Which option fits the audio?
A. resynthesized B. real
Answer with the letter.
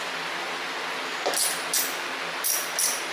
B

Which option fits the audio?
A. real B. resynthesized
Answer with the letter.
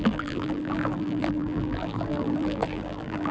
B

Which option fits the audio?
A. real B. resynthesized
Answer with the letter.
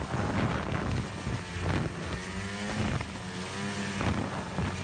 A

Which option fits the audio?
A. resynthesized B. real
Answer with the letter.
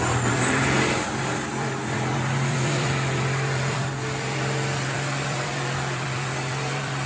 A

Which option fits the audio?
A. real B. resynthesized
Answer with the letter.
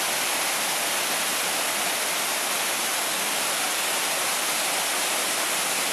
A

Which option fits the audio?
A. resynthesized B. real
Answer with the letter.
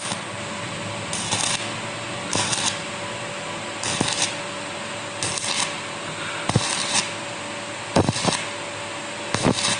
B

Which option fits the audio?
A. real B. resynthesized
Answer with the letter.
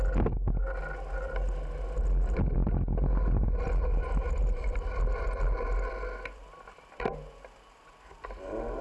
A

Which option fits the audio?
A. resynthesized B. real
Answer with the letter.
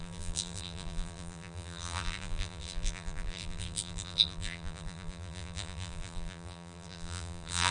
A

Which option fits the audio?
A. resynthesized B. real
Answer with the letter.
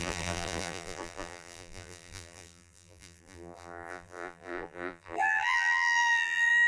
A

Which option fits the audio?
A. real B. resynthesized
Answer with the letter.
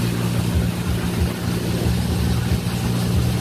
A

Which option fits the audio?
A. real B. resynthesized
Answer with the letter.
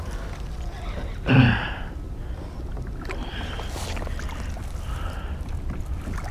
A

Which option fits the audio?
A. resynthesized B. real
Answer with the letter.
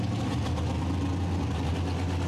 B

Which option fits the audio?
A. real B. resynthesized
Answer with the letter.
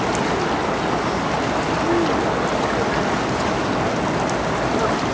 A